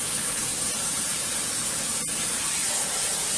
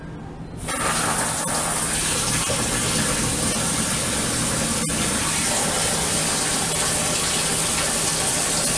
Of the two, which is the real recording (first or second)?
second